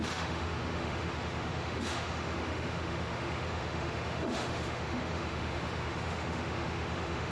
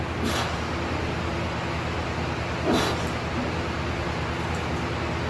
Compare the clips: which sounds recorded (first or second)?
second